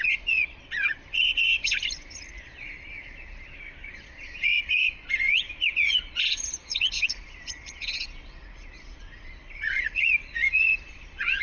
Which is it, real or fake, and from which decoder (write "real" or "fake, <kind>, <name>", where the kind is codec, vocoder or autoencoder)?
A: fake, vocoder, Vocos